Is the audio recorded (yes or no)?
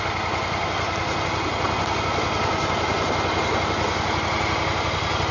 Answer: yes